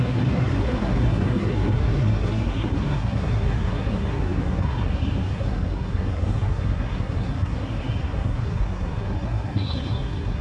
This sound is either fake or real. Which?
fake